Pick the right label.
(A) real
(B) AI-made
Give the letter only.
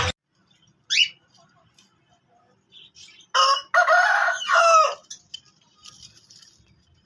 A